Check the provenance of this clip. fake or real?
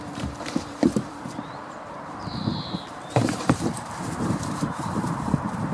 fake